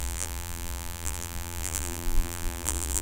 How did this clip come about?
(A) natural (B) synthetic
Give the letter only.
B